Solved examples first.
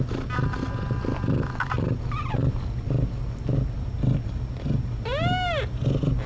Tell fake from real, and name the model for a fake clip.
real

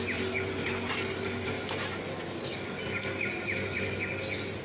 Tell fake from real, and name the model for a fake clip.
real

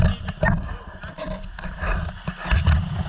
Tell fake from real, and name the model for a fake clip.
real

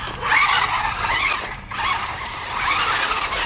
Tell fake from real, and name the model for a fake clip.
real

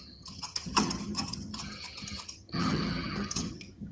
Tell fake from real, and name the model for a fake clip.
fake, vocoder, HiFi-GAN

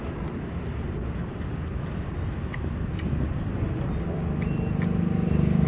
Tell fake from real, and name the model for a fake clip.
real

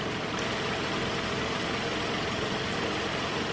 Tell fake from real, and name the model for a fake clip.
real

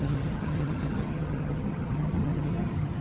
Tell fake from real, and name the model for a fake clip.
fake, vocoder, HiFi-GAN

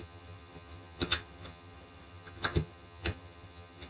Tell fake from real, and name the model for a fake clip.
fake, vocoder, HiFi-GAN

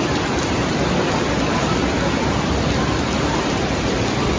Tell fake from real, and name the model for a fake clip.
real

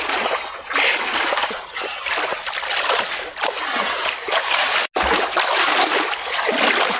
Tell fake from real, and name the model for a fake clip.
real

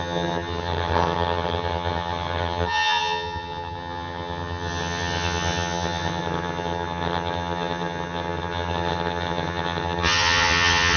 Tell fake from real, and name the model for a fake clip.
fake, vocoder, HiFi-GAN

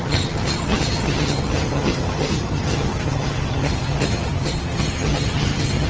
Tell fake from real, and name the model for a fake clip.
fake, vocoder, HiFi-GAN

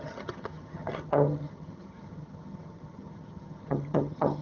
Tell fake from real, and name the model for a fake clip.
fake, vocoder, HiFi-GAN